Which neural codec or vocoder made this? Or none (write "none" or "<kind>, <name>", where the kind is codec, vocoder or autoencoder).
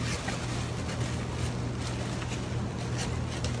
none